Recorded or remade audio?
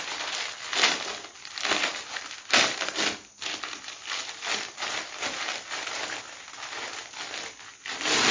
recorded